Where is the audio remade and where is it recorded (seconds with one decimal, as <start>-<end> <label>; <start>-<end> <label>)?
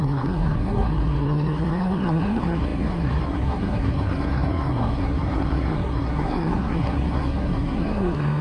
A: 0.0-8.4 remade